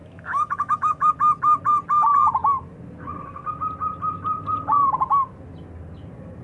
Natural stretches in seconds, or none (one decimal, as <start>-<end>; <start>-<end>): 1.1-6.4